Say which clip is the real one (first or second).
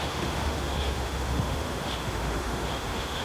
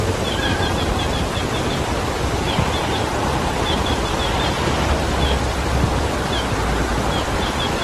second